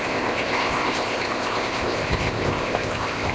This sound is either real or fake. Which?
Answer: fake